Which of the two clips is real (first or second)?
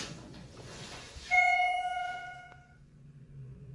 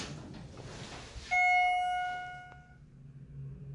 second